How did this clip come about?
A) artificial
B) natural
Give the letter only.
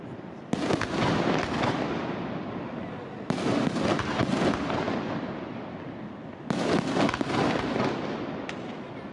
B